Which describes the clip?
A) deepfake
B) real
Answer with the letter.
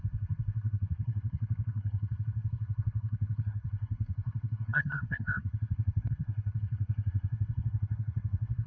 A